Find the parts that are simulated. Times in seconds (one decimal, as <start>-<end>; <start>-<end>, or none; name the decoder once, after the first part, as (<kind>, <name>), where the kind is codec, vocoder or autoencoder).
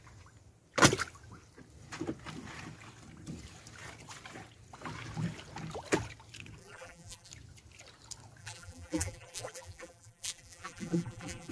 6.6-7.3 (vocoder, BigVGAN v2); 8.4-11.5